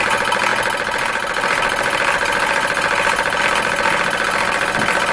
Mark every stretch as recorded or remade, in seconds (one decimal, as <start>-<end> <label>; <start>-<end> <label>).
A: 0.0-5.1 recorded